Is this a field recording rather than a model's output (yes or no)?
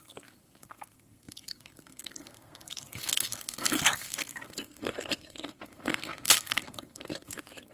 no